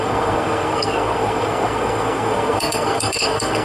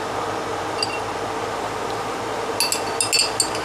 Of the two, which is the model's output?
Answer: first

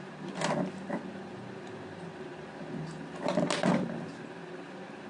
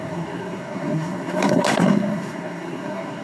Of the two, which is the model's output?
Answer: second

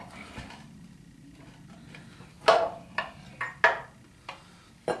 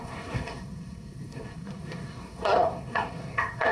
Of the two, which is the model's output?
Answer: second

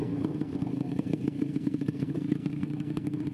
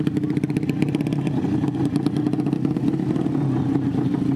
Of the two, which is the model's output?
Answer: first